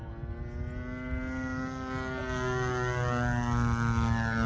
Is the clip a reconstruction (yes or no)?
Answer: no